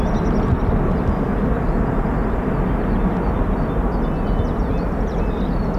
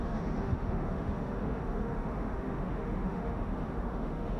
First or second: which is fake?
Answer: second